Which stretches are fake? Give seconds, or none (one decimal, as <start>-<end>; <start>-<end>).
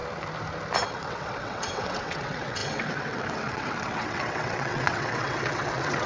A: 0.9-6.1